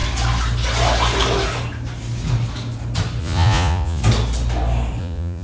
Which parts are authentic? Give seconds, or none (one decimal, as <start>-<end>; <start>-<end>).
0.0-3.2; 4.0-5.0